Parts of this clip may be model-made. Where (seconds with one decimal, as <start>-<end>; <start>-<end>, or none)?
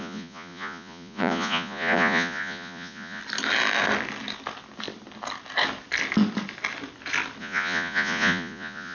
0.0-3.2; 7.4-8.9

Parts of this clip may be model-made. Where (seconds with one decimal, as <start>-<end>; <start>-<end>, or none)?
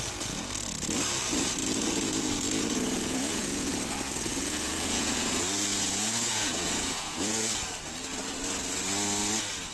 1.6-3.7; 4.3-7.6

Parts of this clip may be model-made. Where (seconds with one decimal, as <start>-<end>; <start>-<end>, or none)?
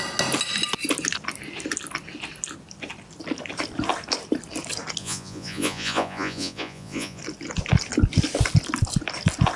5.0-7.2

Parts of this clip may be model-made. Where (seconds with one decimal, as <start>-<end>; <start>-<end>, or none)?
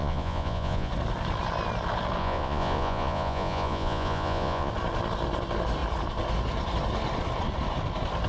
0.0-0.9; 2.2-4.7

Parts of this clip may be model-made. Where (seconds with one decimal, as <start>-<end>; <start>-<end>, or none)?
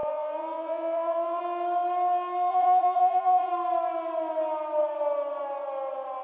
0.0-1.4; 2.5-3.5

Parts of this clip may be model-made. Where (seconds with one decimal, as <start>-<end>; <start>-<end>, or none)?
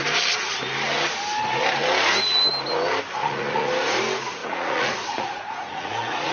3.2-3.7; 4.4-6.3